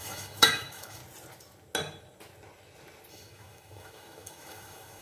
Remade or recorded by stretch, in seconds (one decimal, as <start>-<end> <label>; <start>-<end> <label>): 0.0-1.0 remade; 1.0-3.1 recorded; 3.1-5.0 remade